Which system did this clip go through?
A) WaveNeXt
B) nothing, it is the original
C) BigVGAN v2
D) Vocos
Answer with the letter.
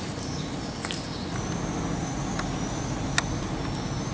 B